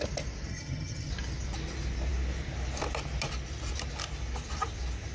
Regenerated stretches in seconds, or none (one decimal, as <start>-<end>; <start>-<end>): 0.5-1.1

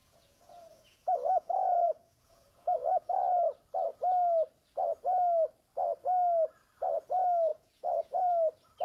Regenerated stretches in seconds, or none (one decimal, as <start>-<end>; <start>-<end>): 0.0-3.2; 7.5-8.3

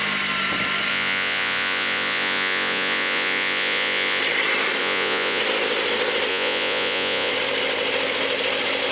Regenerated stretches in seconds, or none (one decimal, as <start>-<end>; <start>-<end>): 0.9-4.2; 4.8-5.4; 6.3-7.3

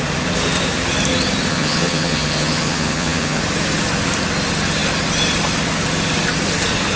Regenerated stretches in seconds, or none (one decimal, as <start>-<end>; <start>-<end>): 1.5-3.4